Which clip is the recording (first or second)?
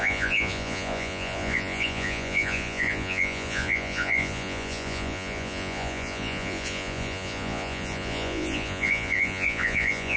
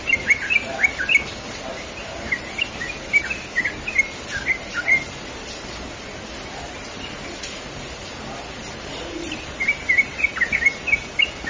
second